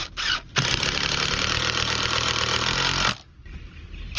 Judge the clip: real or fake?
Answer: real